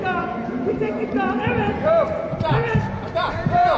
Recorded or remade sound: remade